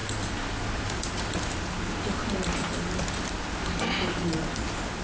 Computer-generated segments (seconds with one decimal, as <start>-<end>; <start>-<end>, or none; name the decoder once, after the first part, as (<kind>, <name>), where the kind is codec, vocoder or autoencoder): none